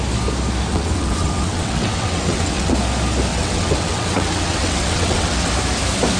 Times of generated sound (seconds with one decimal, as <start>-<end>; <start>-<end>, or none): 0.7-2.7; 3.3-5.5